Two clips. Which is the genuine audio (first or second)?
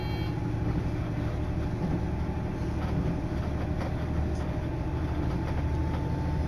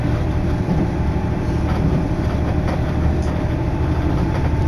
first